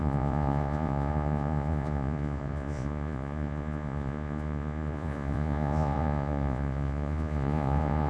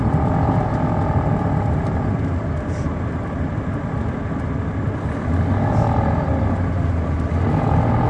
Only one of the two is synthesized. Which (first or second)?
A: first